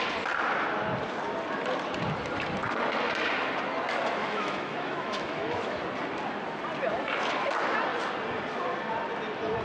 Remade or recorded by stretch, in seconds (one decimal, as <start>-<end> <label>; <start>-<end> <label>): 0.0-4.2 recorded; 4.2-5.8 remade; 5.8-9.6 recorded